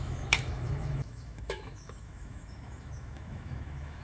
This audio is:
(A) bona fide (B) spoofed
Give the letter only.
B